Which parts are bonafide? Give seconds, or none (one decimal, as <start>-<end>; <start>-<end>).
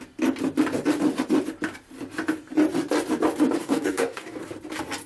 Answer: 0.0-3.6; 4.4-5.1